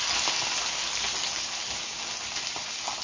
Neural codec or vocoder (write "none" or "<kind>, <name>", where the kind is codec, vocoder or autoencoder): none